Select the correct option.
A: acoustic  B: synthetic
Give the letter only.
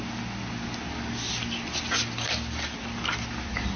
A